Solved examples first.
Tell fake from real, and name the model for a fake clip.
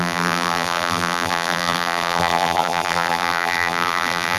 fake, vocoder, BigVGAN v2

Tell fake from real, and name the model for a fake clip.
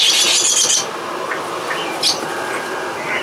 real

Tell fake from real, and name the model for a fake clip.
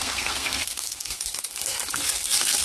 fake, codec, SNAC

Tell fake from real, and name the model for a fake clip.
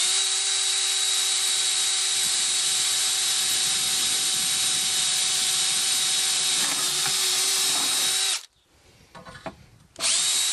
fake, vocoder, BigVGAN v2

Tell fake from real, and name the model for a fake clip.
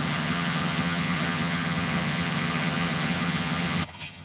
fake, vocoder, HiFi-GAN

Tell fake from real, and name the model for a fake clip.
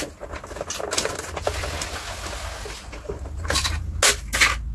real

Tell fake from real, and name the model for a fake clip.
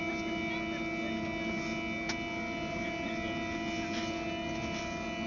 real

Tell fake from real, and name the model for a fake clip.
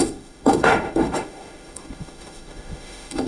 fake, autoencoder, DAC-VAE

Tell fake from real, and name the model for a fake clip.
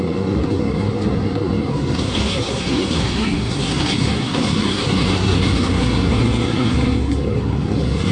fake, codec, SNAC